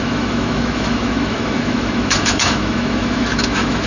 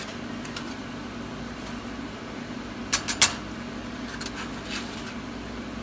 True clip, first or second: second